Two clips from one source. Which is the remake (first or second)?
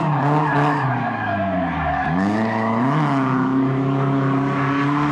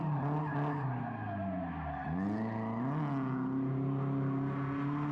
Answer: first